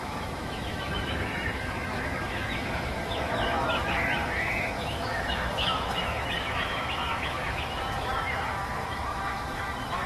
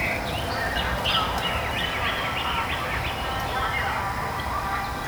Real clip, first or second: second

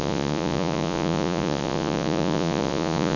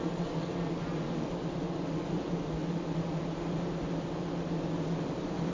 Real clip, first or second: second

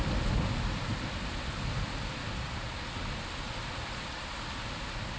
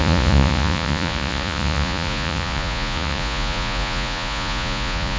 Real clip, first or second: first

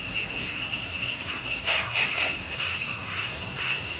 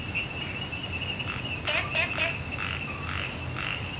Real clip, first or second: second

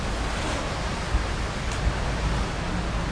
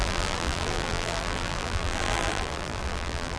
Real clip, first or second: first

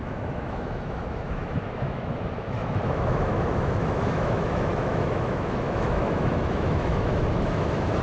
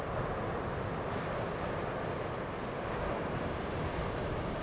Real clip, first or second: second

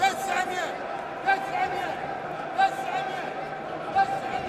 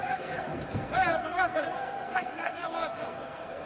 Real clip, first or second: first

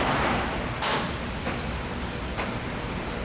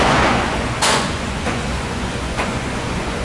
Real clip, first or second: first